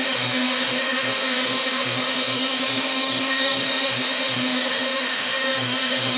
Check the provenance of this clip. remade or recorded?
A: remade